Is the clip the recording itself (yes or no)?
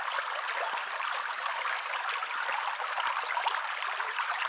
yes